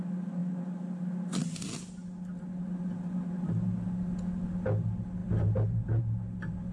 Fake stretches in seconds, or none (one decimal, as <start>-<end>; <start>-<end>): none